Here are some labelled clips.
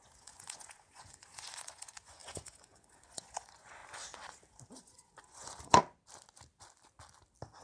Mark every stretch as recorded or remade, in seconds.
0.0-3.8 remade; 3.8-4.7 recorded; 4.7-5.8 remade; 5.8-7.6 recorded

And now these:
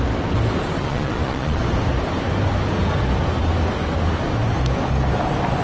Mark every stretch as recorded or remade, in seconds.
0.0-0.8 recorded; 0.8-1.6 remade; 1.6-5.6 recorded

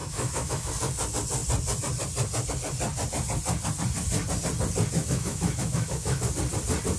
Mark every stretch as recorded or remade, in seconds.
0.0-0.7 remade; 0.7-5.0 recorded; 5.0-6.2 remade; 6.2-7.0 recorded

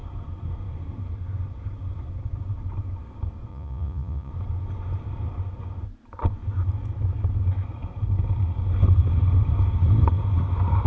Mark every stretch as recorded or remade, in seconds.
0.0-3.5 recorded; 3.5-4.3 remade; 4.3-10.9 recorded

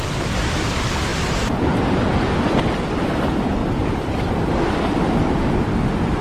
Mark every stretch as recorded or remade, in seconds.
0.0-6.2 remade

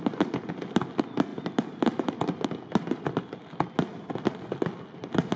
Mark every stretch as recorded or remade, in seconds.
0.0-5.4 recorded